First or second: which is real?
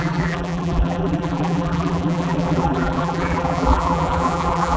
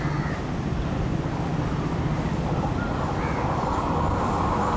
second